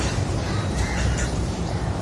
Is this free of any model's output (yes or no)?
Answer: no